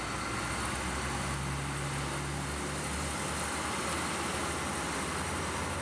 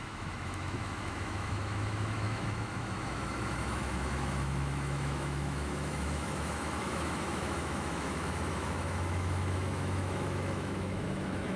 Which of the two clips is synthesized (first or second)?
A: second